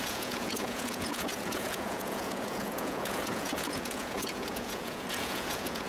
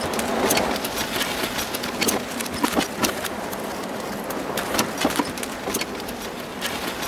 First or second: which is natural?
second